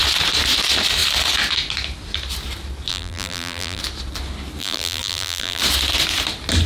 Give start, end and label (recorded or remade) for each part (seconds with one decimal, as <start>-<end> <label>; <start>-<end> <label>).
0.0-2.9 recorded; 2.9-3.8 remade; 3.8-4.6 recorded; 4.6-5.6 remade; 5.6-6.7 recorded